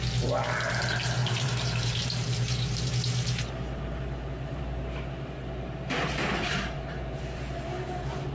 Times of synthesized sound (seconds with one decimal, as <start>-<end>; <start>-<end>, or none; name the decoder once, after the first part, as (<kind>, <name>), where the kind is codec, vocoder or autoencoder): 1.2-4.6 (vocoder, BigVGAN v2); 6.3-8.3